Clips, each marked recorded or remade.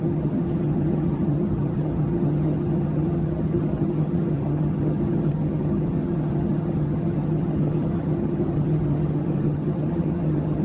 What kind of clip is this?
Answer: remade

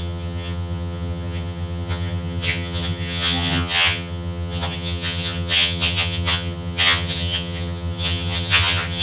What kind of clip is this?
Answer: remade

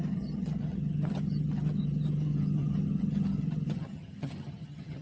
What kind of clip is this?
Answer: remade